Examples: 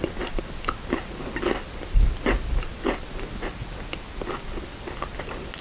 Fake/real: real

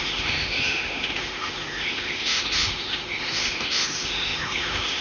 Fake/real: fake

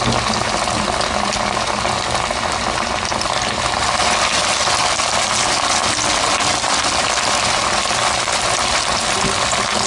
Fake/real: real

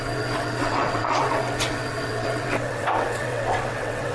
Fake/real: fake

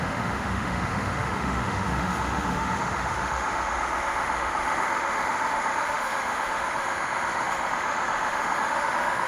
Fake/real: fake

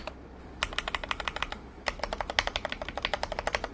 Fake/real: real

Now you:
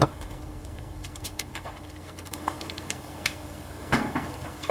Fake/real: fake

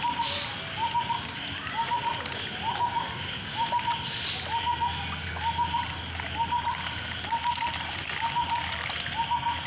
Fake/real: real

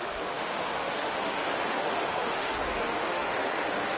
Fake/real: fake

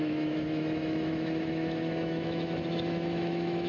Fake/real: fake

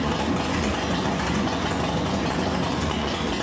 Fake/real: fake